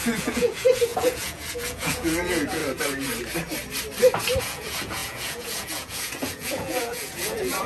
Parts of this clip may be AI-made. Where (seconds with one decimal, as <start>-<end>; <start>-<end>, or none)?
0.0-2.6; 4.4-7.7